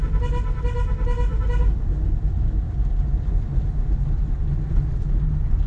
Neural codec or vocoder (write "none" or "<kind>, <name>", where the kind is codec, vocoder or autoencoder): none